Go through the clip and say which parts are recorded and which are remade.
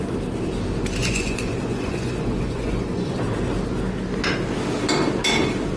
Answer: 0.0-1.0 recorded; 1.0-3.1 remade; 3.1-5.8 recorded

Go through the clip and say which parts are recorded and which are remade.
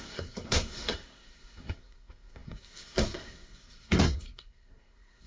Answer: 0.0-5.3 remade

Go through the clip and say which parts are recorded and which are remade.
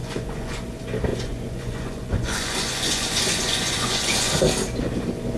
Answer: 0.0-0.6 remade; 0.6-1.1 recorded; 1.1-4.3 remade; 4.3-5.4 recorded